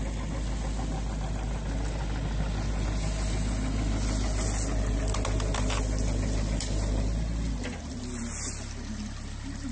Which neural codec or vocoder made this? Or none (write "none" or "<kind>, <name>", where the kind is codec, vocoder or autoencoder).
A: none